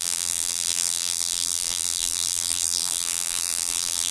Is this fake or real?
fake